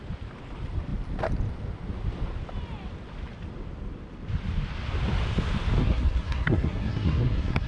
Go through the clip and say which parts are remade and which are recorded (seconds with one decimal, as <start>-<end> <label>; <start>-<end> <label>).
0.0-5.8 recorded; 5.8-7.7 remade